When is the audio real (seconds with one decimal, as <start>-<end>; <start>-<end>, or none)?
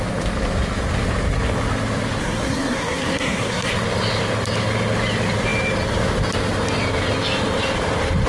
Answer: 0.0-2.2; 3.7-8.3